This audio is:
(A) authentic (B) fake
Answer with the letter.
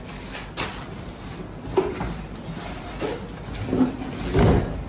A